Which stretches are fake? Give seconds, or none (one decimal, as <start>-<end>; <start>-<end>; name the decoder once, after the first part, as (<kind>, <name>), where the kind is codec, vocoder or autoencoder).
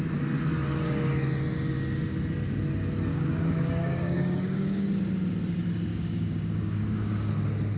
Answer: 3.1-4.9 (codec, DAC); 5.9-7.3